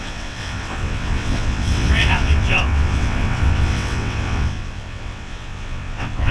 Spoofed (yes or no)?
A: yes